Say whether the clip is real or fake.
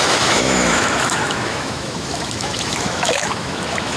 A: fake